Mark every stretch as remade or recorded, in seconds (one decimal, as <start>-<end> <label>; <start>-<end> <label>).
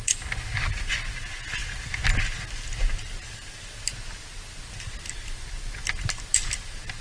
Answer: 0.0-7.0 recorded